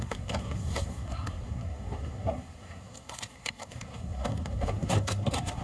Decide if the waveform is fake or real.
fake